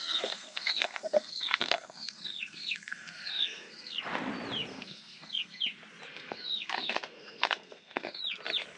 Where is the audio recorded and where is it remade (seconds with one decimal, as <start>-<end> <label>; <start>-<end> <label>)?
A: 0.0-4.0 remade; 4.0-4.7 recorded; 4.7-5.6 remade; 5.6-6.1 recorded; 6.1-8.2 remade; 8.2-8.8 recorded